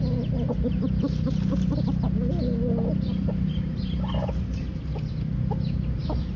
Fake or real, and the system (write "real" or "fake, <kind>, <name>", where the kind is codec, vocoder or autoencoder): real